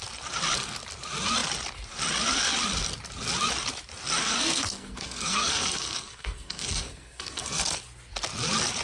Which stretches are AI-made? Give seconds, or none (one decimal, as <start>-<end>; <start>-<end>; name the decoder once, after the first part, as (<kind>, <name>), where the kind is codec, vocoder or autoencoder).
4.2-7.8 (codec, SNAC)